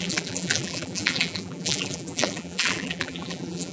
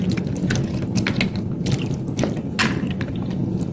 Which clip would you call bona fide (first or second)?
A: second